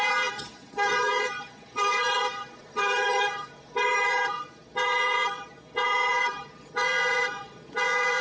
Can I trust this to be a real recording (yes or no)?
no